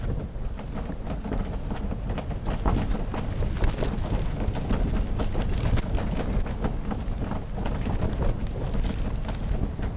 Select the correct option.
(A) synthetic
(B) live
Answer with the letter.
B